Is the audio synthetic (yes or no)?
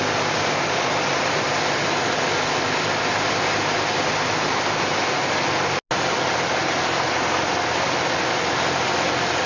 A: no